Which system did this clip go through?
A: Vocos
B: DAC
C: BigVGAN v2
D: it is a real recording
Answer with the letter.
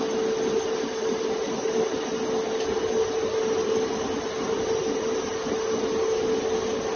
D